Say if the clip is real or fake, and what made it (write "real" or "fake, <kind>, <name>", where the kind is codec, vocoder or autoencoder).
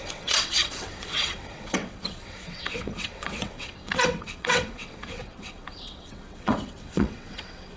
fake, vocoder, WaveNeXt